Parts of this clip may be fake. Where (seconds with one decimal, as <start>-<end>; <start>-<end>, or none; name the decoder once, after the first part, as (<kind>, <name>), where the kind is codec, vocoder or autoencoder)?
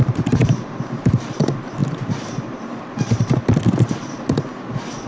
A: 0.4-1.4 (vocoder, BigVGAN v2)